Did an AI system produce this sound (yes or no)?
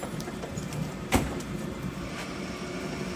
yes